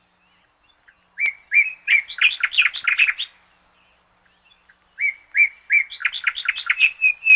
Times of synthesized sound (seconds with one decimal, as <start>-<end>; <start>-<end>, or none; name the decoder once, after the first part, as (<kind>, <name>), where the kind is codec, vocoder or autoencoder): none